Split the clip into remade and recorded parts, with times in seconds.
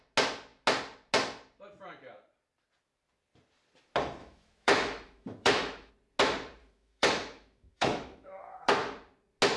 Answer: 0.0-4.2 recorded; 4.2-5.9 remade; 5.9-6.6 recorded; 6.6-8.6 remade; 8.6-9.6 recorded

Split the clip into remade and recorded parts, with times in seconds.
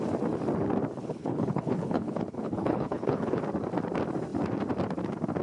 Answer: 0.0-1.0 recorded; 1.0-3.4 remade; 3.4-5.4 recorded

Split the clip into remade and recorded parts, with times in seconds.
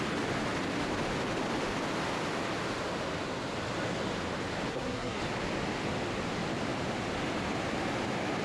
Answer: 0.0-4.7 recorded; 4.7-5.2 remade; 5.2-8.4 recorded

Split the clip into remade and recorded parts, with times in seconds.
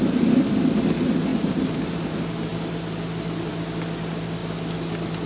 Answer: 0.0-1.3 recorded; 1.3-2.1 remade; 2.1-5.3 recorded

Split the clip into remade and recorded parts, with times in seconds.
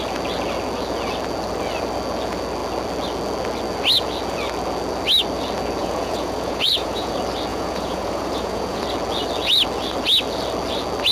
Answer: 0.0-5.8 recorded; 5.8-7.1 remade; 7.1-7.5 recorded; 7.5-8.8 remade; 8.8-11.1 recorded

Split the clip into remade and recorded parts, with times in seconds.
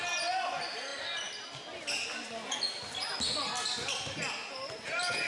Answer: 0.0-5.3 recorded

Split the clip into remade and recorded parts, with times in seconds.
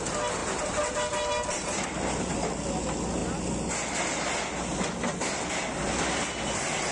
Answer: 0.0-0.4 recorded; 0.4-2.2 remade; 2.2-6.9 recorded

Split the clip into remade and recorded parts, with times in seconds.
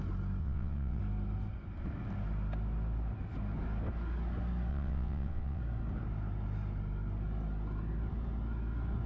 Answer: 0.0-0.4 recorded; 0.4-1.0 remade; 1.0-4.7 recorded; 4.7-5.6 remade; 5.6-9.1 recorded